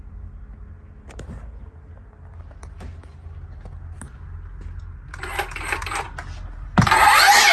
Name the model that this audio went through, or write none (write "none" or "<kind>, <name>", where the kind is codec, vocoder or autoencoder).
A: none